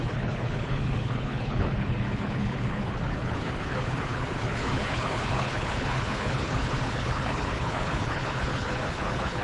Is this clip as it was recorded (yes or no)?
no